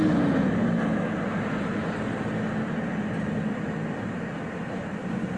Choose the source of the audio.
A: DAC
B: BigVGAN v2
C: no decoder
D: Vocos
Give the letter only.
C